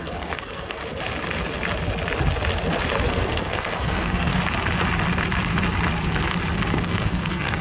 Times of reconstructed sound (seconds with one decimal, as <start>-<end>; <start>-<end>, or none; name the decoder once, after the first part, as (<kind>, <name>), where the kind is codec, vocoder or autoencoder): 0.0-0.8 (codec, SNAC); 3.1-4.3; 6.7-7.6